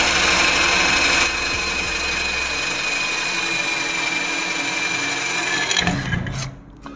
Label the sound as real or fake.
real